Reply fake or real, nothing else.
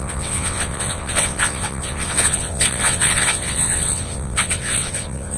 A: fake